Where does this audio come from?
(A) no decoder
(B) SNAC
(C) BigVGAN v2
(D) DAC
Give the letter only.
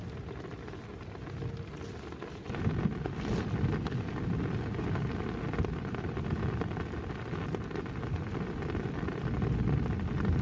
A